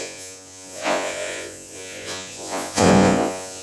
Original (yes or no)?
no